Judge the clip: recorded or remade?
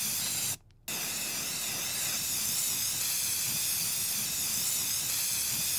recorded